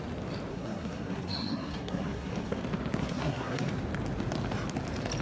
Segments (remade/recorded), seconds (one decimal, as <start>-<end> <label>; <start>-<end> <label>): 0.0-0.5 recorded; 0.5-2.6 remade; 2.6-3.0 recorded; 3.0-3.7 remade; 3.7-5.2 recorded